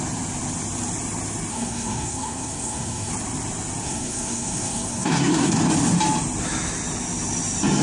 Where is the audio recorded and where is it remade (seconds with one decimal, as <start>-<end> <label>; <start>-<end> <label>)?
0.0-1.5 recorded; 1.5-3.1 remade; 3.1-3.8 recorded; 3.8-5.5 remade; 5.5-7.8 recorded